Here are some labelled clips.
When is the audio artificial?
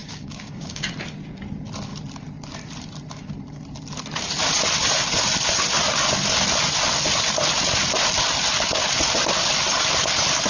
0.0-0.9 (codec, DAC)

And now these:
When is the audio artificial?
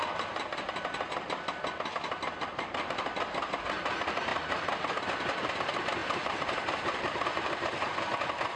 4.3-4.9 (vocoder, BigVGAN v2); 6.0-7.7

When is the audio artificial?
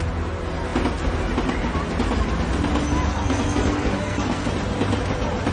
3.1-4.5 (codec, SNAC)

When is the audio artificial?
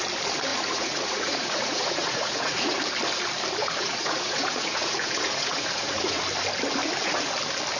0.5-2.8 (vocoder, Vocos); 3.6-6.2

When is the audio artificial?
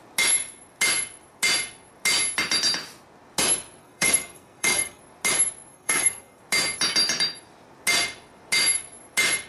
3.8-5.0 (codec, SNAC); 5.7-6.4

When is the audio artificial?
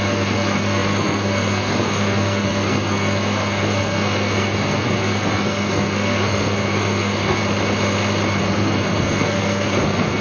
0.0-7.4 (codec, SNAC); 8.4-10.2